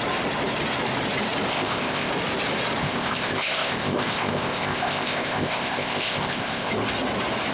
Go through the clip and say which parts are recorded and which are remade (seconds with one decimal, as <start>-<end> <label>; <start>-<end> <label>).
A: 0.0-1.5 recorded; 1.5-2.1 remade; 2.1-2.8 recorded; 2.8-6.7 remade; 6.7-7.5 recorded